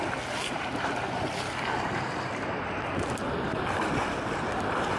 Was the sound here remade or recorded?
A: recorded